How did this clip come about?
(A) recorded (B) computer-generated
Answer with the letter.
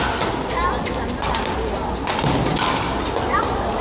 A